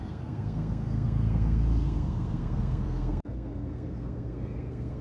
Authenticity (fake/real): fake